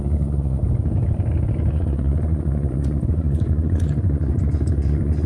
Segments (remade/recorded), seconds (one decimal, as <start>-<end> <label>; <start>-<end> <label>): 0.0-0.6 remade; 0.6-1.7 recorded; 1.7-5.3 remade